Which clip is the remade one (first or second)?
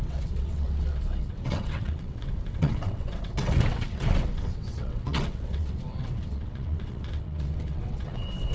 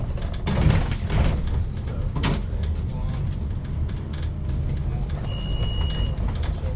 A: first